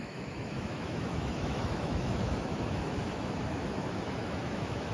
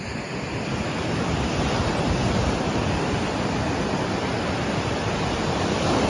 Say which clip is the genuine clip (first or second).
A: second